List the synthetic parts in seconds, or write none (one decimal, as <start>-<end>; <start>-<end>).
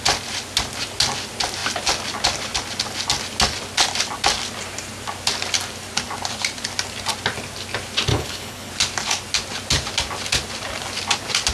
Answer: 8.1-8.7